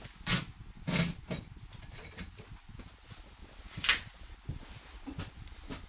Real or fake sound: real